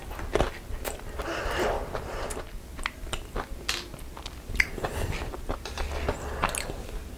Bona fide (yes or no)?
yes